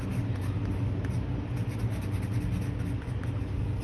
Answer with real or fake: real